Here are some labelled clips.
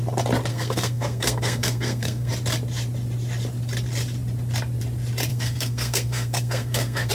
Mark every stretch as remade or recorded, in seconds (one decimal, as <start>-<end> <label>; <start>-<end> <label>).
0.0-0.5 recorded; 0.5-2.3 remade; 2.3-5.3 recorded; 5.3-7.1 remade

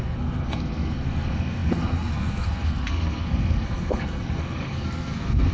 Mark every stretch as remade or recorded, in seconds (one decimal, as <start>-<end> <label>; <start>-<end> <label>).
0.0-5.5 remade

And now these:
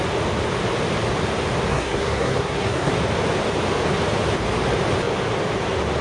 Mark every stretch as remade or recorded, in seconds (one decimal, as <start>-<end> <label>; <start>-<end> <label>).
0.0-1.7 recorded; 1.7-2.9 remade; 2.9-6.0 recorded

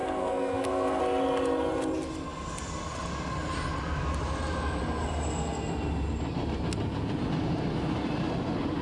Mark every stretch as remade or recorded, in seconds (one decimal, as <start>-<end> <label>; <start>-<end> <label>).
0.0-1.0 remade; 1.0-8.8 recorded

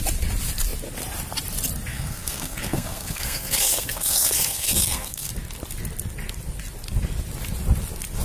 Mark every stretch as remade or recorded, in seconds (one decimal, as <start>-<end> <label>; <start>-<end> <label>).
0.0-1.9 recorded; 1.9-5.3 remade; 5.3-8.2 recorded

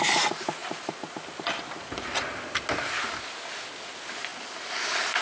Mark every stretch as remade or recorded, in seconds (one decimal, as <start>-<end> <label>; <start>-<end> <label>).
0.0-5.2 recorded